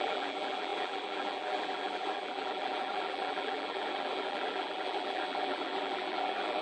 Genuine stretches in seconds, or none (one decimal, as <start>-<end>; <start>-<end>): none